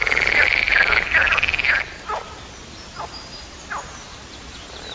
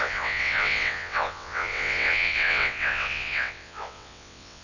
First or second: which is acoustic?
first